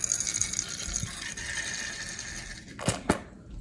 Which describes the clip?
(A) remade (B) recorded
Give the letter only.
B